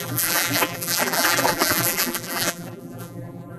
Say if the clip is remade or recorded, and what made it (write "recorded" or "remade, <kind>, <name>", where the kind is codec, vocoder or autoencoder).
remade, vocoder, BigVGAN v2